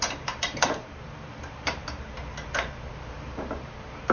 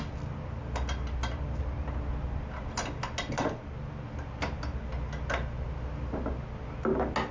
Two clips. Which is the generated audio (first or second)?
first